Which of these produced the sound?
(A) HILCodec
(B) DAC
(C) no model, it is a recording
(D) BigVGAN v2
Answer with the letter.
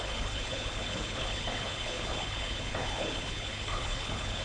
A